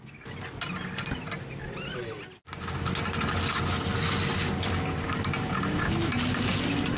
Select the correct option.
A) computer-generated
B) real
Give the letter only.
B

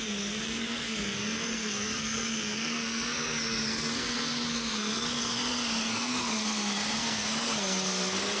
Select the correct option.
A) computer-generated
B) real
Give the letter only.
A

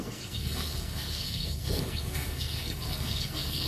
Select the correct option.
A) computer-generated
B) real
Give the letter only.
A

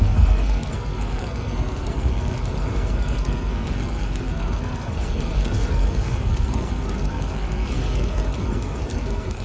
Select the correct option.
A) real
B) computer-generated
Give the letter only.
B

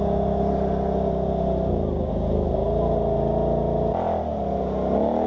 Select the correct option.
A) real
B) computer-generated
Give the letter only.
A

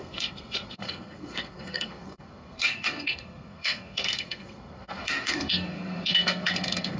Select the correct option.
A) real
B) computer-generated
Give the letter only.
B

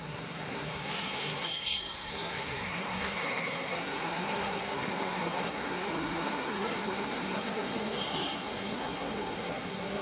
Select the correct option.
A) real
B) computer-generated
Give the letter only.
B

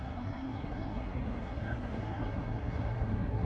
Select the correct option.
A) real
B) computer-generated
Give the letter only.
B